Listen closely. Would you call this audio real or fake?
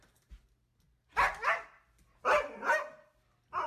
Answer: real